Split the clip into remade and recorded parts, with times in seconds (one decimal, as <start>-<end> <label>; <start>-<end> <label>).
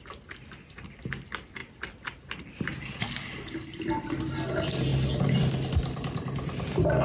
0.0-4.9 recorded; 4.9-5.4 remade; 5.4-7.0 recorded